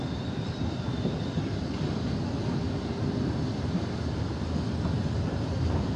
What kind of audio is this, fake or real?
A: real